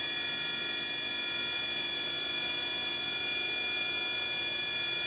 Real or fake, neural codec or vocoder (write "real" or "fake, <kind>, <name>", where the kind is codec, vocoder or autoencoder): real